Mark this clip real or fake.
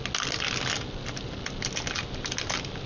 real